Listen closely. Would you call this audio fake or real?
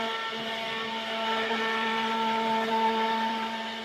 fake